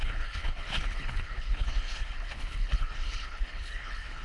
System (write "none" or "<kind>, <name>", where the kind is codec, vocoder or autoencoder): codec, HILCodec